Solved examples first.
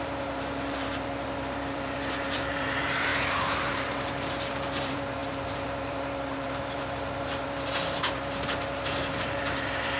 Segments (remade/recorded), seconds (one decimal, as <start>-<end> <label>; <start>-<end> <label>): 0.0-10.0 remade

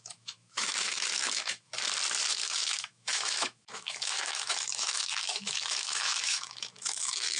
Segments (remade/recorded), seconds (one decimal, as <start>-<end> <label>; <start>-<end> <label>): 0.0-1.7 remade; 1.7-2.3 recorded; 2.3-7.4 remade

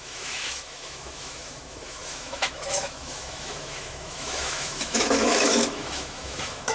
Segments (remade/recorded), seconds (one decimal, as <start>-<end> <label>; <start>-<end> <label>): 0.0-6.7 remade